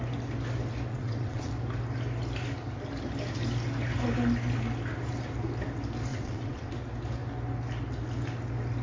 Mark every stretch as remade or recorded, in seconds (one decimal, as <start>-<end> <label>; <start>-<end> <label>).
0.0-0.9 recorded; 0.9-1.5 remade; 1.5-6.1 recorded; 6.1-6.7 remade; 6.7-8.8 recorded